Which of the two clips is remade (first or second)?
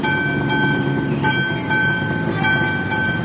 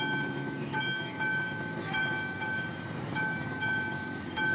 second